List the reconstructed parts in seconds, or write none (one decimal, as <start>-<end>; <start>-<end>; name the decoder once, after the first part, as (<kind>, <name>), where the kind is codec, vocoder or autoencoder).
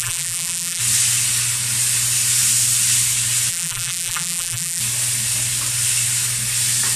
0.0-0.8 (vocoder, BigVGAN v2); 3.5-4.8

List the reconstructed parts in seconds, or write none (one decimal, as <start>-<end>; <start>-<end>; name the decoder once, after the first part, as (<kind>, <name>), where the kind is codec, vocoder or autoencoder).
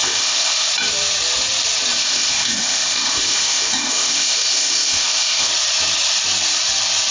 0.0-0.7 (codec, ZipCodec); 2.0-5.5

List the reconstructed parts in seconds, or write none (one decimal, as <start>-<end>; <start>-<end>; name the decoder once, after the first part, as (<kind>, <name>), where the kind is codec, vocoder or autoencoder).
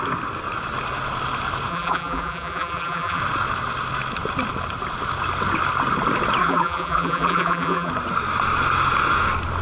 1.7-3.2 (vocoder, BigVGAN v2); 6.4-7.9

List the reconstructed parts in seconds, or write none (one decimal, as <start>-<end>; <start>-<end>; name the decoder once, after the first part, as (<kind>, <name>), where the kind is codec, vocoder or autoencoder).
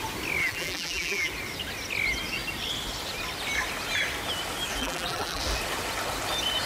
0.4-1.3 (vocoder, BigVGAN v2); 4.8-5.4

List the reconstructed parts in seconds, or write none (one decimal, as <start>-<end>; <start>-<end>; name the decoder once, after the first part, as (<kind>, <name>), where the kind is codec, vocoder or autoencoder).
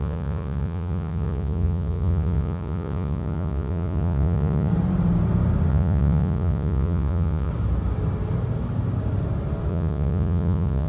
0.0-4.7 (vocoder, Vocos); 5.7-7.5; 9.7-10.9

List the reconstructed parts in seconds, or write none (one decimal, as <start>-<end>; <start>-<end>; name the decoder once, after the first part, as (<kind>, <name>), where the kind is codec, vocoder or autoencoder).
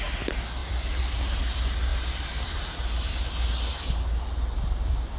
0.6-1.4 (vocoder, BigVGAN v2)